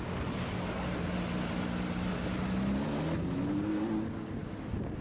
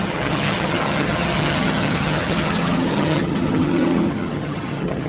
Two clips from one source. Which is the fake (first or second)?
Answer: second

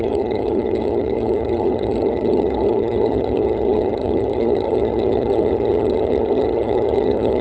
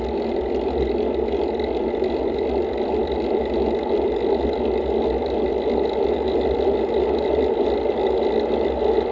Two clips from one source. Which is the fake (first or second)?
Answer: first